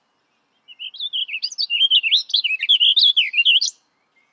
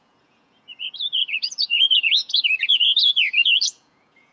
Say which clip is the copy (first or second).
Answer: second